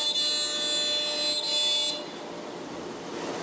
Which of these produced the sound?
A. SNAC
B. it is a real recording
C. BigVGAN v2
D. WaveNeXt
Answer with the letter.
B